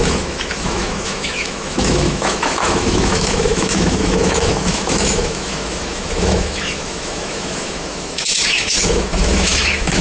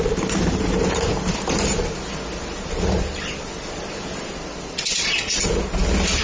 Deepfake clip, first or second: first